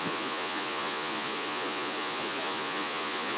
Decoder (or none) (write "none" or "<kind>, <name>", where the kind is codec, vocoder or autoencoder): vocoder, Vocos